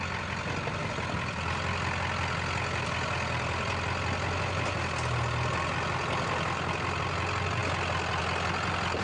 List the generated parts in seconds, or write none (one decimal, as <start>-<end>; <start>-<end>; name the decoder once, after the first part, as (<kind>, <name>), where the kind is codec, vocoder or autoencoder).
none

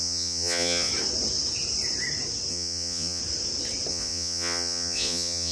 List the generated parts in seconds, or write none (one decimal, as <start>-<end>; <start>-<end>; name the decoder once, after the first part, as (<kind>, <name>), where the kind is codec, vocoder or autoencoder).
0.0-0.9 (vocoder, Vocos); 2.5-3.2; 3.9-5.5

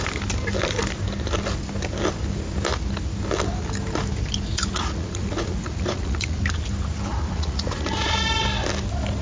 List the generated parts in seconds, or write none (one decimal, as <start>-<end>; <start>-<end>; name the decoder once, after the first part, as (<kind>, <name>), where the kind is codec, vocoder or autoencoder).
4.5-6.4 (vocoder, Vocos); 7.1-8.1

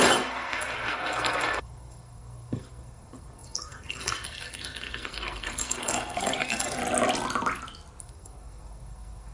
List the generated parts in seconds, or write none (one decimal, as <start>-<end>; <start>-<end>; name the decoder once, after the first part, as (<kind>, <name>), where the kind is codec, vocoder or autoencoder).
0.0-6.8 (codec, SNAC); 8.0-9.3

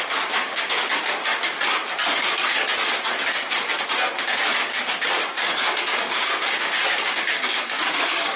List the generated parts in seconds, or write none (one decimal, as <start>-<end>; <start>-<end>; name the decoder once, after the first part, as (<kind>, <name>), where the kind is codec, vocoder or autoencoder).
0.0-1.3 (codec, DAC); 5.4-8.4

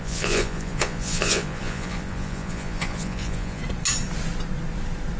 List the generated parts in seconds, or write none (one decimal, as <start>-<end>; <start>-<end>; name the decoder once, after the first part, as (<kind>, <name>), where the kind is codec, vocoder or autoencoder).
0.0-3.6 (vocoder, Vocos)

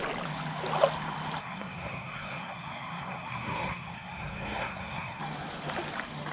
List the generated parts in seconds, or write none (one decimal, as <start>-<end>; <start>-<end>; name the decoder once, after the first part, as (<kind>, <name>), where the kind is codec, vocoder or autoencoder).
1.4-5.2 (codec, SNAC)